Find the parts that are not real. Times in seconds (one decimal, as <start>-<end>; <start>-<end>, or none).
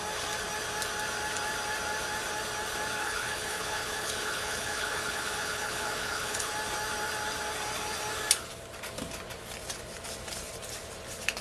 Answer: 3.0-6.5